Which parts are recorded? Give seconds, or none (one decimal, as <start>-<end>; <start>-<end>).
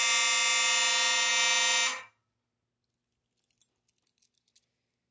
0.0-5.1